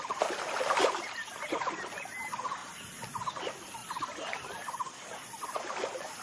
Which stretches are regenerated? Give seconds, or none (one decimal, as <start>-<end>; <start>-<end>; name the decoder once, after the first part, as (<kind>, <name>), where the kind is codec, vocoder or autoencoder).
2.6-3.4 (vocoder, BigVGAN v2); 3.8-5.4